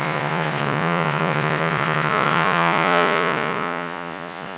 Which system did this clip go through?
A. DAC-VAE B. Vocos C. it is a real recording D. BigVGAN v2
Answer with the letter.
B